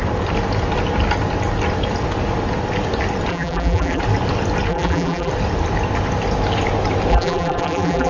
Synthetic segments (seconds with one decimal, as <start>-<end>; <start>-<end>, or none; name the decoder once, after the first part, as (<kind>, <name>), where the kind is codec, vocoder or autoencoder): 3.3-4.0 (vocoder, BigVGAN v2); 4.7-5.3; 7.1-8.1